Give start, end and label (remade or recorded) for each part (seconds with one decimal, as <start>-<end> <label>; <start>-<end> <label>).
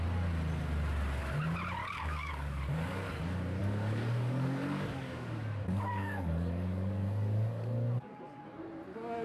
0.0-1.8 recorded; 1.8-3.2 remade; 3.2-3.6 recorded; 3.6-8.4 remade; 8.4-9.2 recorded